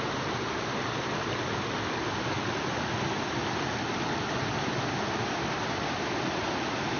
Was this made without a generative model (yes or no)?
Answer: yes